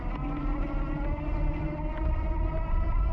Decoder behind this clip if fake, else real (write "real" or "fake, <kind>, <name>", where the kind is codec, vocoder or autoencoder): real